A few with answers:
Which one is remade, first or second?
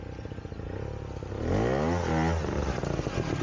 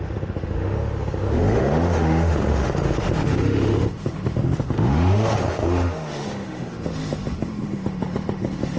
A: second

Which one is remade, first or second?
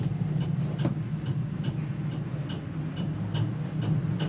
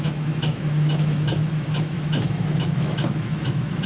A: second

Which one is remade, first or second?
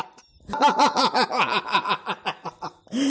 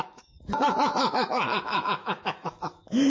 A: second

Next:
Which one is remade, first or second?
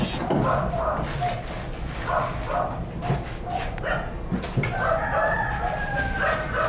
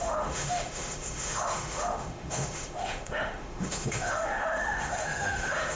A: second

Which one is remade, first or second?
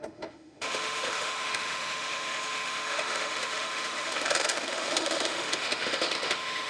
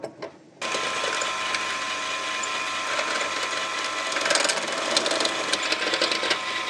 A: first